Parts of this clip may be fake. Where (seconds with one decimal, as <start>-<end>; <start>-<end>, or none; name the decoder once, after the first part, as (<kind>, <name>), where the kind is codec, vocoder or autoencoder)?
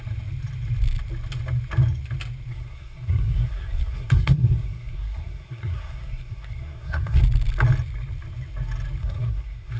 2.5-7.2 (codec, SNAC); 9.0-9.8